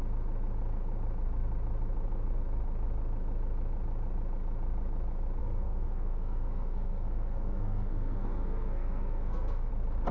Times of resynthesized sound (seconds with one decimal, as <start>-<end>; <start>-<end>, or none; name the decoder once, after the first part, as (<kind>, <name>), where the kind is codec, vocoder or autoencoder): 5.4-9.7 (codec, SNAC)